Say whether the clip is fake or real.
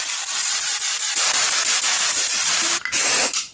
real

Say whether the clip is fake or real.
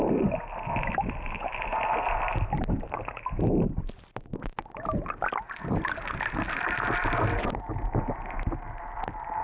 real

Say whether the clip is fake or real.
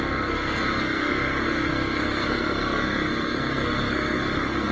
fake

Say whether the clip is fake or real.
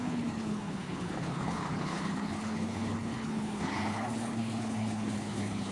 fake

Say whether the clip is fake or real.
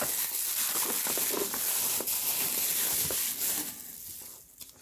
real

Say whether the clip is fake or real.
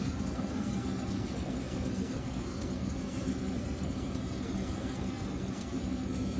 fake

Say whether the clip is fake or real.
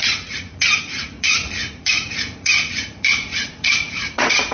fake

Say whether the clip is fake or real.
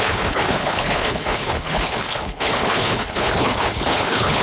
fake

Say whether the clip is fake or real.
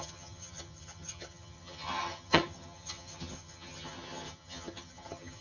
fake